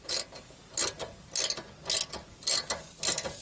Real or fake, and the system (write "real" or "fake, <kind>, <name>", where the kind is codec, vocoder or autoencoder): real